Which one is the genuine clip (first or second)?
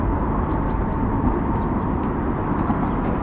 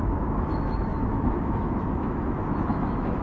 first